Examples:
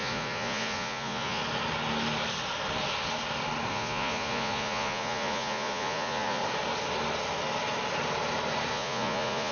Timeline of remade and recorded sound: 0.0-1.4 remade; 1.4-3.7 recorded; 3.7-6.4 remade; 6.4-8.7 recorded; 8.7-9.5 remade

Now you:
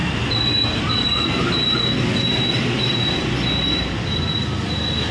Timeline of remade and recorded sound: 0.0-5.1 recorded

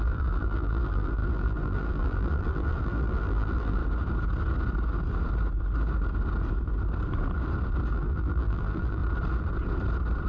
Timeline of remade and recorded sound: 0.0-3.8 remade; 3.8-7.9 recorded; 7.9-9.0 remade; 9.0-10.3 recorded

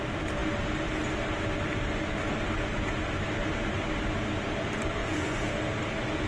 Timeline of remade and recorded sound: 0.0-5.0 recorded; 5.0-5.5 remade; 5.5-6.3 recorded

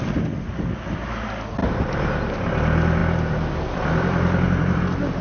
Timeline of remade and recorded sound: 0.0-3.0 recorded; 3.0-4.8 remade; 4.8-5.2 recorded

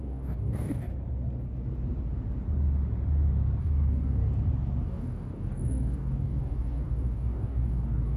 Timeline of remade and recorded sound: 0.0-0.9 remade; 0.9-3.6 recorded; 3.6-4.2 remade; 4.2-4.8 recorded; 4.8-8.2 remade

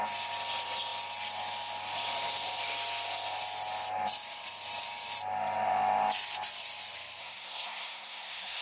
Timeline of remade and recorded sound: 0.0-7.2 recorded; 7.2-8.6 remade